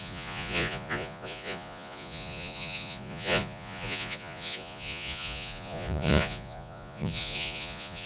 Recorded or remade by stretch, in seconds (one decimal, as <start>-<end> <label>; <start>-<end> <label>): 0.0-8.1 remade

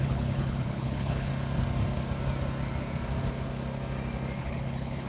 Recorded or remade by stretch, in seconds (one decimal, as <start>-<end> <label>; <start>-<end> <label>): 0.0-1.3 remade; 1.3-4.4 recorded; 4.4-5.1 remade

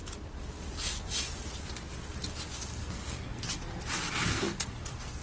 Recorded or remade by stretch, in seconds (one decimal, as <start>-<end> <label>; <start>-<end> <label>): 0.0-2.8 recorded; 2.8-3.5 remade; 3.5-4.3 recorded; 4.3-5.2 remade

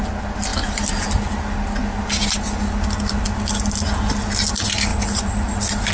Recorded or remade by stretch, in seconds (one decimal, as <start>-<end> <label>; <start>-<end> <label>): 0.0-4.9 recorded; 4.9-5.5 remade; 5.5-5.9 recorded

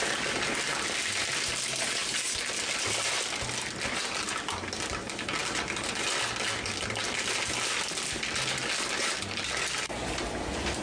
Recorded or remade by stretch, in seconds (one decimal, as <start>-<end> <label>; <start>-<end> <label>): 0.0-10.8 recorded

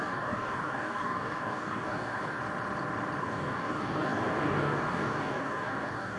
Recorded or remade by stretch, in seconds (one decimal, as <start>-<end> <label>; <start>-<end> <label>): 0.0-2.4 remade; 2.4-3.2 recorded; 3.2-6.2 remade

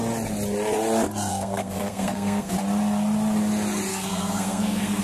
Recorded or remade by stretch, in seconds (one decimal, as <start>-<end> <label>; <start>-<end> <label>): 0.0-1.3 recorded; 1.3-2.5 remade; 2.5-3.9 recorded; 3.9-5.0 remade

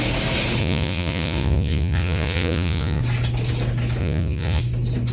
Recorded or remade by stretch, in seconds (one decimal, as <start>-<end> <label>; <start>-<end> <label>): 0.0-0.6 recorded; 0.6-3.0 remade; 3.0-4.0 recorded; 4.0-4.6 remade; 4.6-5.1 recorded